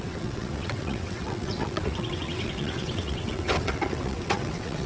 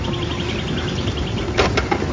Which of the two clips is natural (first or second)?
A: second